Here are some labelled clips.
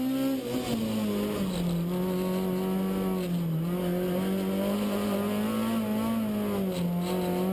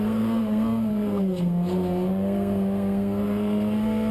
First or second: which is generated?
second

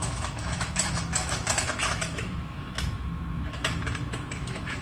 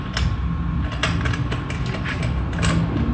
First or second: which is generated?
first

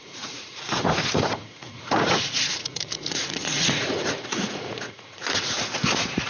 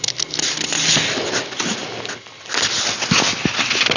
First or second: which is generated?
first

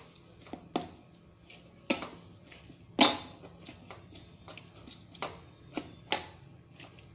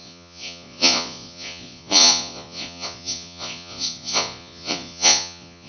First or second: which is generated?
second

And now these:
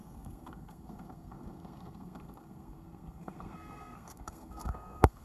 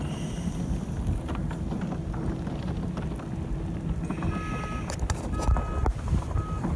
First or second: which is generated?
first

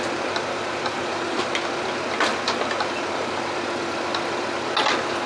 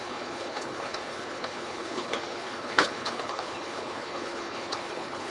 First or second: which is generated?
second